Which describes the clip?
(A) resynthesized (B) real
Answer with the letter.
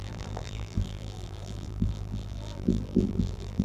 A